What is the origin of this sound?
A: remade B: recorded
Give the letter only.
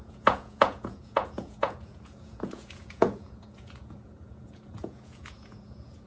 A